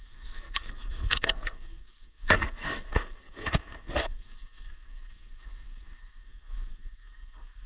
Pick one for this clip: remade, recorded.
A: remade